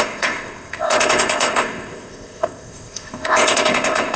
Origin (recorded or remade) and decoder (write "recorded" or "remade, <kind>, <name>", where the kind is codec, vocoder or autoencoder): remade, codec, ZipCodec